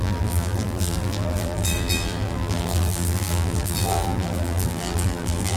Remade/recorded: remade